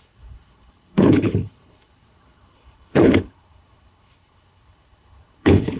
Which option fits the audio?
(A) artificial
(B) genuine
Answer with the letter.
A